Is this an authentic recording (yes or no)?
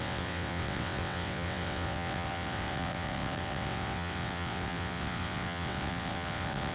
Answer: no